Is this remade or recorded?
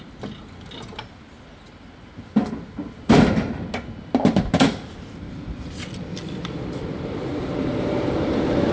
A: recorded